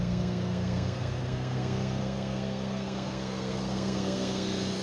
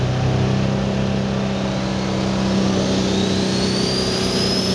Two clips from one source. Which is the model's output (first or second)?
first